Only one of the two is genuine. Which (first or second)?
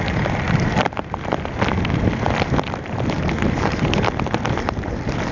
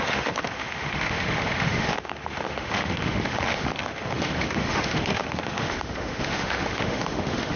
first